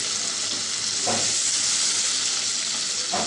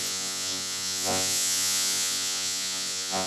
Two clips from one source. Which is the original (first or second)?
first